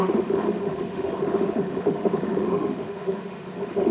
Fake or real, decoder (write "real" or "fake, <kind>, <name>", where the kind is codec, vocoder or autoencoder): fake, autoencoder, DAC-VAE